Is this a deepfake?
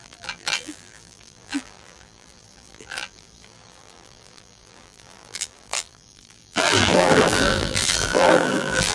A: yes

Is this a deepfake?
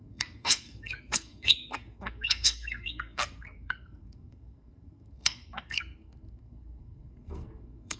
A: yes